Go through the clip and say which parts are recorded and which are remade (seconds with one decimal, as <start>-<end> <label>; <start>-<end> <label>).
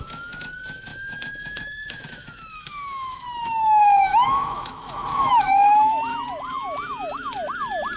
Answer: 0.0-6.1 remade; 6.1-8.0 recorded